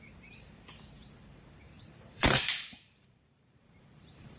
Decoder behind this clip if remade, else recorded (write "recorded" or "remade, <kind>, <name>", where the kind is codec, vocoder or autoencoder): remade, vocoder, BigVGAN v2